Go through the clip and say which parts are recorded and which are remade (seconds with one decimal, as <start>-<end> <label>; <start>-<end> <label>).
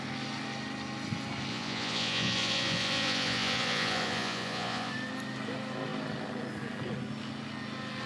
0.0-1.5 recorded; 1.5-4.9 remade; 4.9-8.1 recorded